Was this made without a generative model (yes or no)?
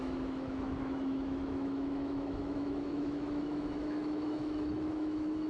no